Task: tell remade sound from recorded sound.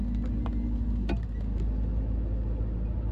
recorded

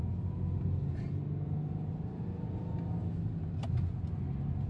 recorded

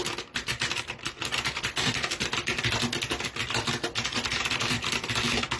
recorded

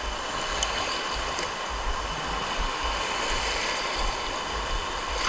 recorded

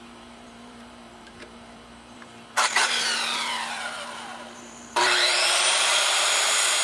remade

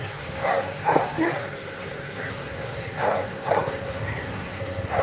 remade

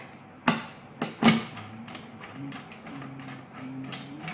recorded